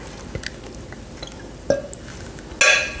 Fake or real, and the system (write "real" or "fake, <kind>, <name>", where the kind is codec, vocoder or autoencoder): real